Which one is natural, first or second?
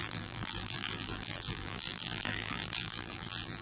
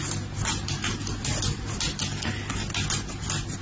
second